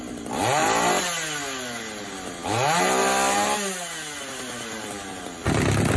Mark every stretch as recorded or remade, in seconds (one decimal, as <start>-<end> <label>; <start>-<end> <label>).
0.0-6.0 recorded